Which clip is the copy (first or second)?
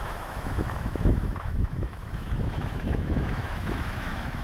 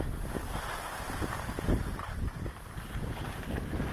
first